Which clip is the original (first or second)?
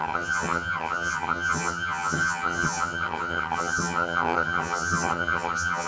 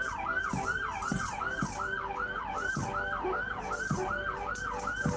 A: second